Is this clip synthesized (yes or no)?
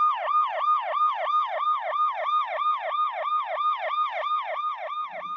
no